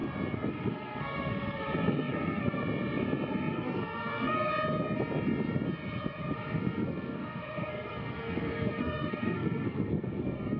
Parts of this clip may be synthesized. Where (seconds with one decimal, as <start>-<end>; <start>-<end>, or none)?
0.5-2.6; 3.5-4.5; 6.6-10.6

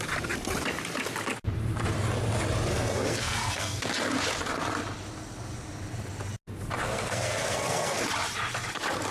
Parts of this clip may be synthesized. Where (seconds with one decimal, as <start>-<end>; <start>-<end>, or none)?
2.7-3.8; 6.8-8.0

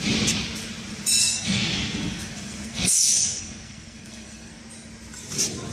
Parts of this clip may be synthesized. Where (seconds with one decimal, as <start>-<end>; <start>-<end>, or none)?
1.2-4.6

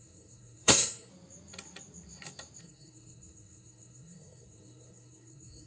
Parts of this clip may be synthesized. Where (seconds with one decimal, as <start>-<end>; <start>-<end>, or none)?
0.0-1.1; 2.6-5.7

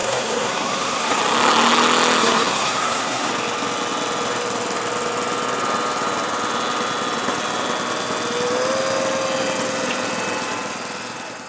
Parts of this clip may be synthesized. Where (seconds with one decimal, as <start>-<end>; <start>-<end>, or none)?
0.0-1.2; 2.2-3.3